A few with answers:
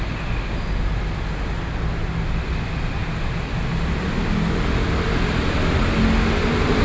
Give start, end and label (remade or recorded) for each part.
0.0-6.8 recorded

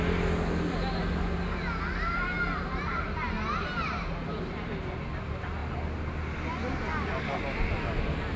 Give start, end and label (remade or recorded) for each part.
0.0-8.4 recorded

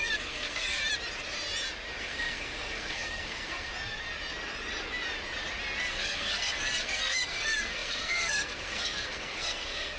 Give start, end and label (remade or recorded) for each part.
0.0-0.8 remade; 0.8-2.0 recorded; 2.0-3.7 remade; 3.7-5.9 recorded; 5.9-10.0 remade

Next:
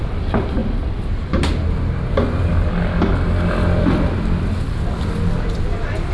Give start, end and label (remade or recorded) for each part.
0.0-6.1 recorded

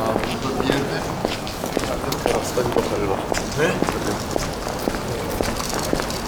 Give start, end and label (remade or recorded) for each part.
0.0-1.2 recorded; 1.2-2.0 remade; 2.0-6.3 recorded

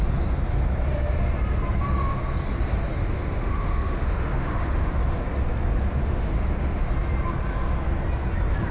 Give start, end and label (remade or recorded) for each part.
0.0-2.9 recorded; 2.9-5.0 remade; 5.0-6.0 recorded; 6.0-6.9 remade; 6.9-8.7 recorded